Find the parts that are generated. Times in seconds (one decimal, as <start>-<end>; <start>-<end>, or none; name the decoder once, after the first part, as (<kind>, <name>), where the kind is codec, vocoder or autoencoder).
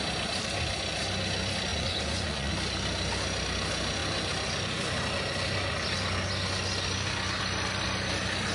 1.7-2.5 (vocoder, Vocos)